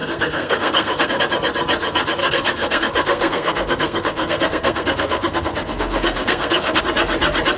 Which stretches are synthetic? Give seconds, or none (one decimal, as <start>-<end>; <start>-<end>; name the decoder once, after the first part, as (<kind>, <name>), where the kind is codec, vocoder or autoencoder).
0.0-1.2 (codec, SNAC); 2.2-6.8